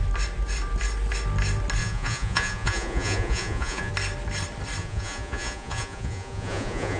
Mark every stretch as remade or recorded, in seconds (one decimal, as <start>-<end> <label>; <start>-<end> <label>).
0.0-1.8 recorded; 1.8-3.9 remade; 3.9-4.8 recorded; 4.8-7.0 remade

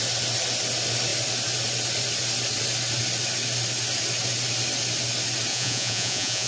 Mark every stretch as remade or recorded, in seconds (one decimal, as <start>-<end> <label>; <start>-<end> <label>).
0.0-5.5 recorded; 5.5-6.5 remade

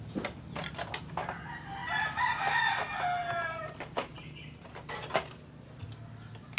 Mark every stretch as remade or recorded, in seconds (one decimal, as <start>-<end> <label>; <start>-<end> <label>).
0.0-6.6 recorded

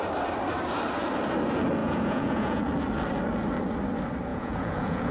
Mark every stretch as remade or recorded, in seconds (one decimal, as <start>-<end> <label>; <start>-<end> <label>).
0.0-1.8 recorded; 1.8-2.6 remade; 2.6-4.3 recorded; 4.3-5.1 remade

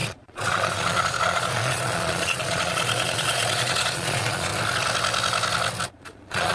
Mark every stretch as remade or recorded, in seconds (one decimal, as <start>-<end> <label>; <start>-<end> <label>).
0.0-4.5 remade; 4.5-5.9 recorded; 5.9-6.5 remade